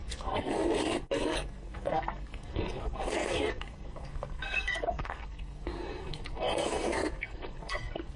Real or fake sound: fake